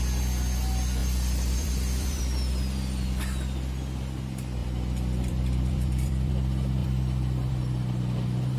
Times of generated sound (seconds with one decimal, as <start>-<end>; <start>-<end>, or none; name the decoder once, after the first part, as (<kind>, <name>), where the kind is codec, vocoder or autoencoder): 1.0-2.2 (vocoder, BigVGAN v2); 4.6-6.3; 6.8-7.5